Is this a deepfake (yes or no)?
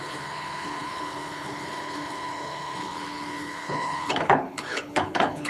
yes